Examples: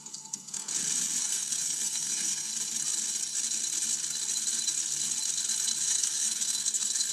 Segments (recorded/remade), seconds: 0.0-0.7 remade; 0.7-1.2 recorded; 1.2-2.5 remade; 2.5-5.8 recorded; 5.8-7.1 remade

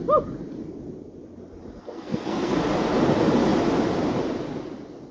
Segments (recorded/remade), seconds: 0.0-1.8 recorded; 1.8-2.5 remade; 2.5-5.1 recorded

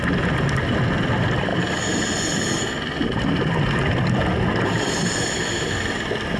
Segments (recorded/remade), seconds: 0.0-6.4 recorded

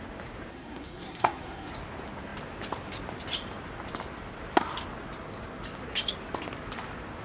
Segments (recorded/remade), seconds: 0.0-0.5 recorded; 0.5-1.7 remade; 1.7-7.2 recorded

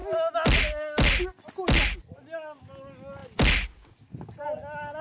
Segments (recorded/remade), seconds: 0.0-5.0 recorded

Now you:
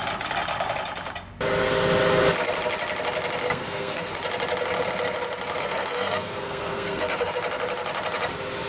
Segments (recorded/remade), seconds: 0.0-3.4 recorded; 3.4-4.2 remade; 4.2-5.6 recorded; 5.6-7.3 remade; 7.3-8.7 recorded

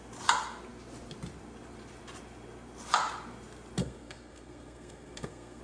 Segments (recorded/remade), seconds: 0.0-3.8 recorded; 3.8-5.6 remade